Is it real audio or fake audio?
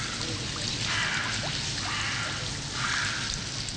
real